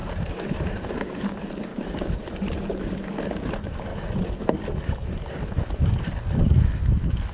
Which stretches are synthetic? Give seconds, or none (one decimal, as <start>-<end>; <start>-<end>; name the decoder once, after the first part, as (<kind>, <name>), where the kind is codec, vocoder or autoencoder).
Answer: 0.0-1.1 (vocoder, BigVGAN v2); 1.7-3.1; 3.9-5.2